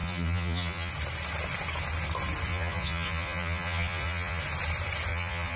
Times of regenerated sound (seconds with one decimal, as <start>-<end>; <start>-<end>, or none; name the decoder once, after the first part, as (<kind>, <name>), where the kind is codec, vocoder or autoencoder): 0.0-0.9 (vocoder, Vocos); 2.5-4.4; 5.1-5.6